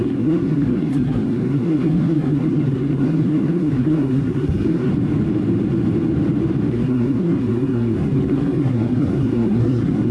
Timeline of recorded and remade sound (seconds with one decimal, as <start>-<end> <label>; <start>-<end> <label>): 0.0-4.9 remade; 4.9-6.7 recorded; 6.7-10.1 remade